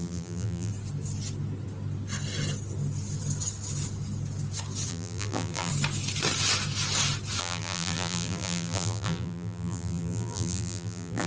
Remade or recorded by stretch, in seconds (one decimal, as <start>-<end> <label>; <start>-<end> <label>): 0.0-0.7 remade; 0.7-4.9 recorded; 4.9-5.7 remade; 5.7-7.4 recorded; 7.4-11.3 remade